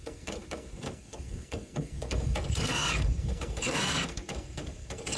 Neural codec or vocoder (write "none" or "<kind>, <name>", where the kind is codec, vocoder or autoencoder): codec, SNAC